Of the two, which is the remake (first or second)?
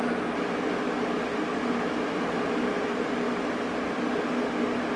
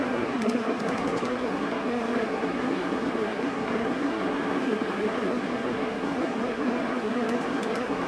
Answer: second